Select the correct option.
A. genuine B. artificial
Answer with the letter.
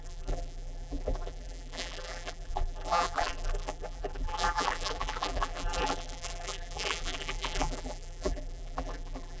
B